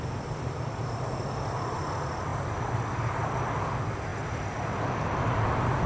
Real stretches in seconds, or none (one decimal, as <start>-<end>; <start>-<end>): 0.0-2.3; 3.2-5.9